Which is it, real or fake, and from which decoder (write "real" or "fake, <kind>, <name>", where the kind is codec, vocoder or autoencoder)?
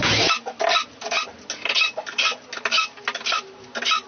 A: real